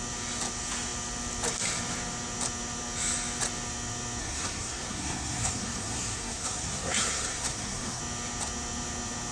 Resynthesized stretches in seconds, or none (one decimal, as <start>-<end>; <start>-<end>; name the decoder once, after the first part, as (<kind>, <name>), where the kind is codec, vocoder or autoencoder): 4.2-8.0 (codec, SNAC)